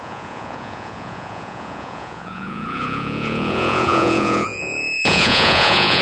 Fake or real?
fake